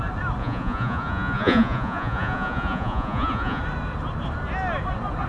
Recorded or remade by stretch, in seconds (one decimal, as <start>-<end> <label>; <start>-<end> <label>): 0.0-0.4 recorded; 0.4-3.6 remade; 3.6-5.3 recorded